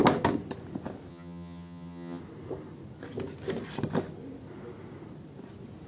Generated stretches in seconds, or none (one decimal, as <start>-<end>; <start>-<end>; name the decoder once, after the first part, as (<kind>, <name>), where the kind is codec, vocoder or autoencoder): 1.1-2.2 (vocoder, HiFi-GAN)